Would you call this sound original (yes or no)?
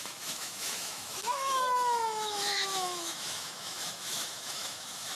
no